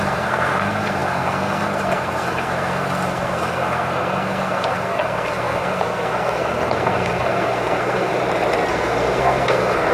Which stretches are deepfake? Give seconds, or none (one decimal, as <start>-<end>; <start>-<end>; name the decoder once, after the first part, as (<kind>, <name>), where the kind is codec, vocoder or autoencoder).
0.0-8.1 (codec, SNAC); 8.7-9.9